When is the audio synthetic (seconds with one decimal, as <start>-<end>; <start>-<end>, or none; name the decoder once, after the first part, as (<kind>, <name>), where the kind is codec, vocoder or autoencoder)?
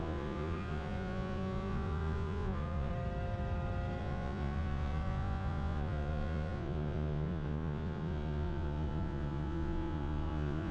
0.0-2.9 (vocoder, Vocos); 4.0-10.7